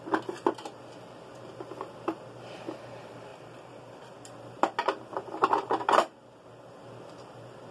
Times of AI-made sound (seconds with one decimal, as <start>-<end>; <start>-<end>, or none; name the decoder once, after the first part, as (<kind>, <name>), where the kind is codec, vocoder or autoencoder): none